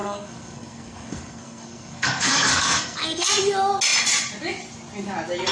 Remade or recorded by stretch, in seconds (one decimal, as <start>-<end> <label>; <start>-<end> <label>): 0.0-3.3 remade; 3.3-5.5 recorded